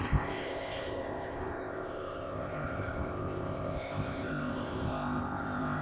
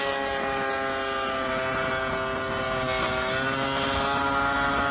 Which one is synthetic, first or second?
first